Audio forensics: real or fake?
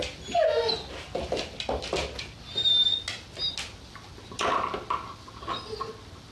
real